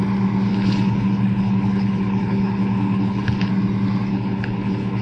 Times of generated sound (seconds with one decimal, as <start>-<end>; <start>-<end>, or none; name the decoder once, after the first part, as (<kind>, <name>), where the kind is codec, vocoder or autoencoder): 0.5-3.5 (codec, HILCodec); 4.1-5.0